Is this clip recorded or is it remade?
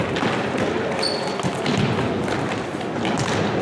recorded